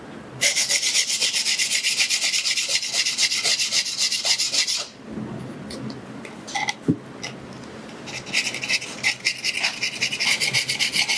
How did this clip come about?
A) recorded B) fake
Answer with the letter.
A